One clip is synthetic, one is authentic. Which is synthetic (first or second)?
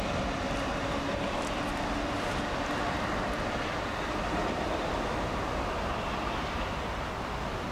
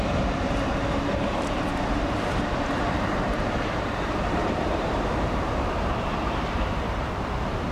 second